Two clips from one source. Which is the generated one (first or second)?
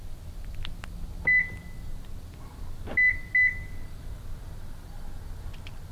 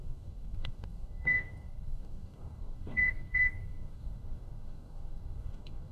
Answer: second